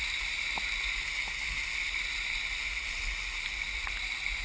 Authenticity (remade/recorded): recorded